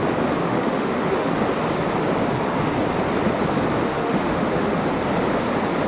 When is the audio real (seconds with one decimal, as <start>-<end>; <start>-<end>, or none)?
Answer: 0.0-0.4; 1.3-3.9; 4.8-5.9

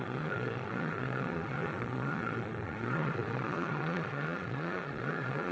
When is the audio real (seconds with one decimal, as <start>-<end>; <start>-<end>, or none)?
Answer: none